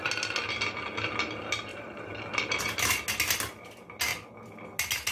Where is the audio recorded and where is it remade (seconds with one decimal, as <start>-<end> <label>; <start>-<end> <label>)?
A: 0.0-1.7 recorded; 1.7-2.6 remade; 2.6-5.1 recorded

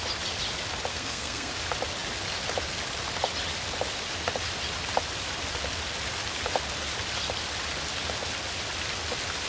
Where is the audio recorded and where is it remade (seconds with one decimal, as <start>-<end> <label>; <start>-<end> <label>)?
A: 0.0-0.9 recorded; 0.9-1.5 remade; 1.5-9.5 recorded

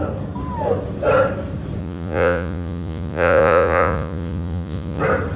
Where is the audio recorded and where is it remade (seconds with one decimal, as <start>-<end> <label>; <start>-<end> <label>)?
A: 0.0-1.8 recorded; 1.8-5.0 remade; 5.0-5.4 recorded

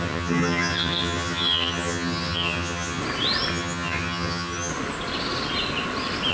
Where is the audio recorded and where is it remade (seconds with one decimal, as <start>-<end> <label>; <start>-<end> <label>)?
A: 0.0-3.0 remade; 3.0-3.5 recorded; 3.5-4.7 remade; 4.7-6.3 recorded

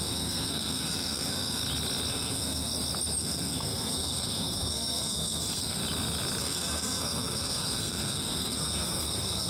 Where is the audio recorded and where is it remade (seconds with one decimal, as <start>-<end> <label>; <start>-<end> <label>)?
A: 0.0-1.6 remade; 1.6-2.1 recorded; 2.1-2.7 remade; 2.7-3.2 recorded; 3.2-5.8 remade; 5.8-6.4 recorded; 6.4-9.5 remade